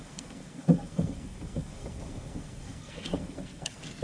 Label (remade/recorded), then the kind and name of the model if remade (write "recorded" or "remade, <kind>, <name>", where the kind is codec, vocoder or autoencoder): remade, codec, SNAC